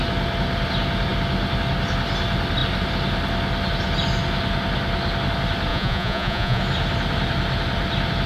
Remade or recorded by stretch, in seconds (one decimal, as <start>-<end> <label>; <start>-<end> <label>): 0.0-5.7 recorded; 5.7-6.6 remade; 6.6-8.3 recorded